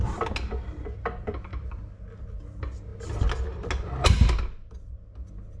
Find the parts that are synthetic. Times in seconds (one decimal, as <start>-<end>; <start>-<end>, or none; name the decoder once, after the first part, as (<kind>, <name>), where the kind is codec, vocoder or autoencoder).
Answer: none